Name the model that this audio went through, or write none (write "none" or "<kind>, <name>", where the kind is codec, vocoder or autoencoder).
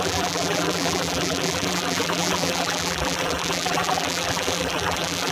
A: vocoder, BigVGAN v2